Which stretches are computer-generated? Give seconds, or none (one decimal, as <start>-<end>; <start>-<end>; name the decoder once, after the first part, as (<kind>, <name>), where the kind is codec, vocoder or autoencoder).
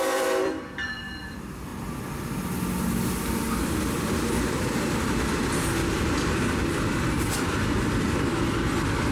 0.0-1.7 (vocoder, BigVGAN v2); 6.7-9.1